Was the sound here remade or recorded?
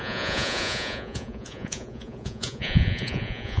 remade